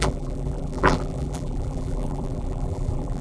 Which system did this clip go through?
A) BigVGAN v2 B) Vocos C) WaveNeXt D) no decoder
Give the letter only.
A